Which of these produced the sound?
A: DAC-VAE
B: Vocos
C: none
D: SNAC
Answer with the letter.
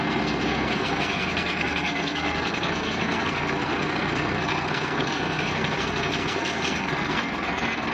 D